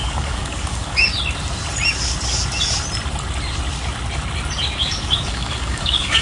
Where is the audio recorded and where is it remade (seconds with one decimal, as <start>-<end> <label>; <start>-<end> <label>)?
0.0-1.1 remade; 1.1-4.8 recorded; 4.8-6.2 remade